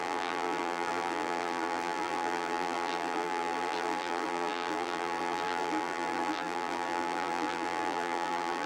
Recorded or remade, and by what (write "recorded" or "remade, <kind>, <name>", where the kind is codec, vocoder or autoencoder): remade, vocoder, BigVGAN v2